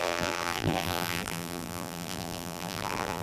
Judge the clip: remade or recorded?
remade